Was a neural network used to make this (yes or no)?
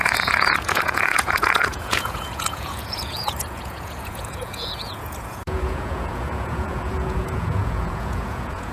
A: yes